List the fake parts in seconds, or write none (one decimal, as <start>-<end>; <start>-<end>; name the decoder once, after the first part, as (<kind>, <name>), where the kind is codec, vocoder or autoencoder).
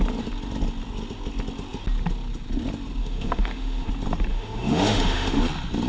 3.0-3.9 (autoencoder, DAC-VAE); 4.3-5.4